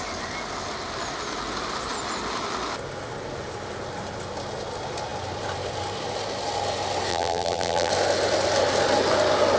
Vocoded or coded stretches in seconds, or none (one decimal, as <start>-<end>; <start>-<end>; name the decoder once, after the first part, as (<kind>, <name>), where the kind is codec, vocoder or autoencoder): 7.1-7.9 (vocoder, BigVGAN v2)